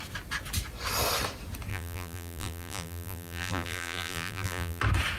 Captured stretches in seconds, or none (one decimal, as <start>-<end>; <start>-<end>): 0.0-1.7; 4.8-5.2